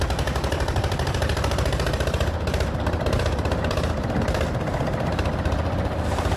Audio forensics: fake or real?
fake